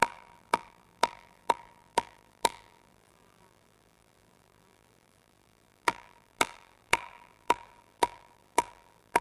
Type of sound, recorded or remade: remade